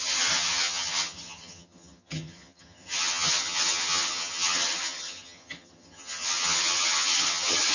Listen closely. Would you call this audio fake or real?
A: fake